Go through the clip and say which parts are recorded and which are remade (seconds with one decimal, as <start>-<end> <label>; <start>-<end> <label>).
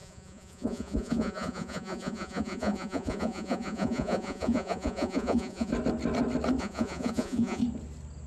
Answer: 0.0-5.7 remade; 5.7-6.6 recorded; 6.6-7.6 remade; 7.6-8.3 recorded